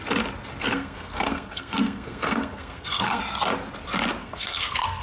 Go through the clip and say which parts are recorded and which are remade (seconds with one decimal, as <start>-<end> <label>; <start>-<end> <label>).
0.0-0.6 recorded; 0.6-3.2 remade; 3.2-4.2 recorded; 4.2-5.0 remade